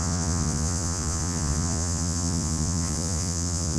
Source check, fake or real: fake